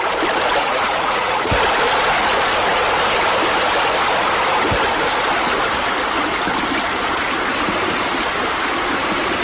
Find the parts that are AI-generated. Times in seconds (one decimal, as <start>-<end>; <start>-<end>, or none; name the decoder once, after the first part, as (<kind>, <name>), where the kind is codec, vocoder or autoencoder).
0.6-1.5 (vocoder, Vocos)